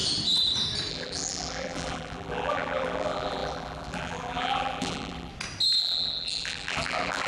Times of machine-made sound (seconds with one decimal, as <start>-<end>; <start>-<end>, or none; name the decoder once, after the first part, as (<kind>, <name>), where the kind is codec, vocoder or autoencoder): 0.9-5.3 (vocoder, BigVGAN v2); 5.8-7.3